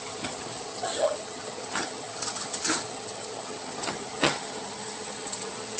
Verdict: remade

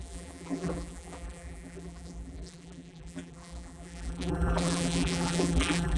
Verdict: remade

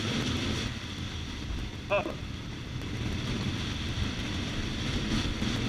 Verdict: recorded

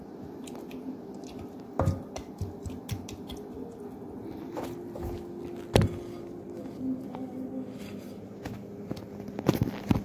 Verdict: recorded